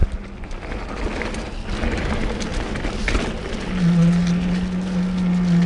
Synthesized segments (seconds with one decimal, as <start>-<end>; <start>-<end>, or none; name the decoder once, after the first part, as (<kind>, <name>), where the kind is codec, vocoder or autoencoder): none